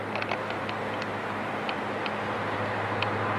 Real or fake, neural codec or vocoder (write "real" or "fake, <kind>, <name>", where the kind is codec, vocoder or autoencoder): real